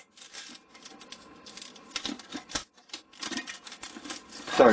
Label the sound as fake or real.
real